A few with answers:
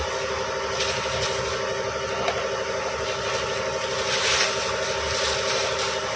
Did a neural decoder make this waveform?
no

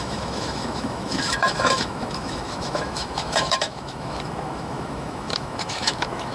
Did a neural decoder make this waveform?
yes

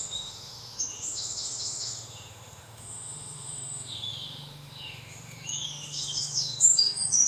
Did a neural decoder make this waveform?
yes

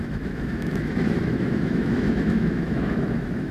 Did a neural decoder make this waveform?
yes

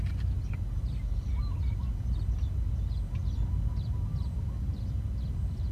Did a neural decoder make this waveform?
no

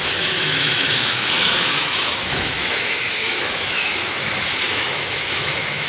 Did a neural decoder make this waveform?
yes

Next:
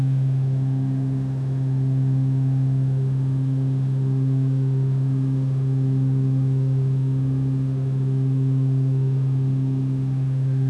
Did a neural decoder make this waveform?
yes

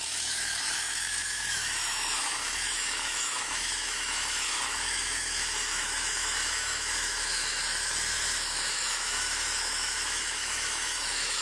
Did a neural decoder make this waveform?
yes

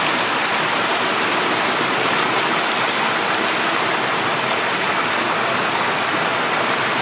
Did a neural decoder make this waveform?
no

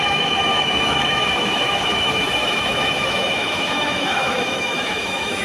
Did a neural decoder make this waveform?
yes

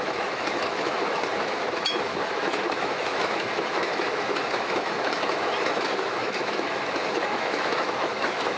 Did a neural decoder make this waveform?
yes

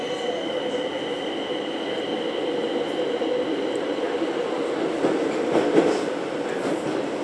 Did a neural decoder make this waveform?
no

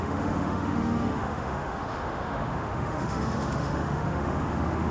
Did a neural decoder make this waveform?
yes